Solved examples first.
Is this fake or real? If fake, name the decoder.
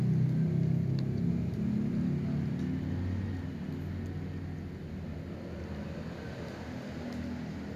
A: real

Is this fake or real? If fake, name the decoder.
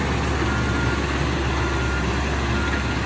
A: real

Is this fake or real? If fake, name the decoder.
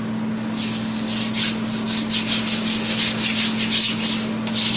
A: real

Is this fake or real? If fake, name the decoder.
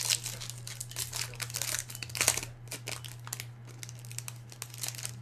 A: real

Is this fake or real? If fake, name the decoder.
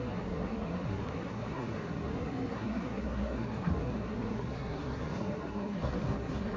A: fake, codec, SNAC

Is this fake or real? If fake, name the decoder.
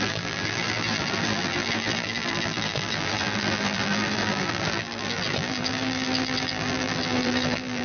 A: fake, vocoder, BigVGAN v2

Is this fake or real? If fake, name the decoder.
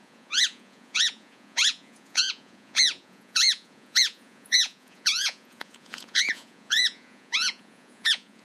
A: fake, vocoder, Vocos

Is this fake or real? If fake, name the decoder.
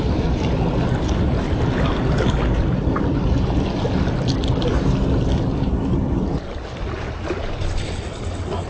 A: real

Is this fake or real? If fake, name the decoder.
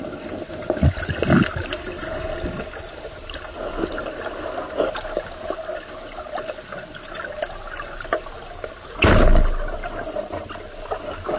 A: real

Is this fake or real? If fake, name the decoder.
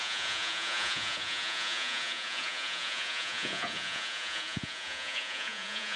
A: fake, vocoder, Vocos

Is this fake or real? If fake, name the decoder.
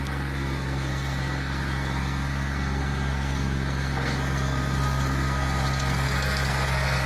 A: fake, codec, SNAC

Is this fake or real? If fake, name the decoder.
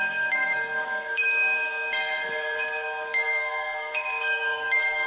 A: fake, codec, DAC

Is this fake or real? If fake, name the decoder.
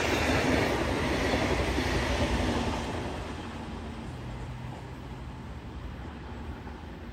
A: real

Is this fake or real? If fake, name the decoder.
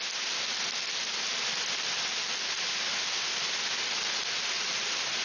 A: real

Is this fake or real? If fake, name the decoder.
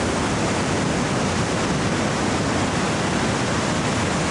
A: real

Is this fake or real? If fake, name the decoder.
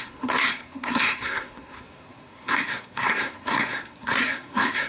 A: fake, codec, SNAC